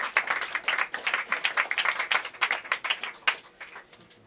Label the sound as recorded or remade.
recorded